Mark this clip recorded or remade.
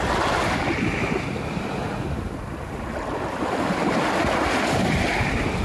recorded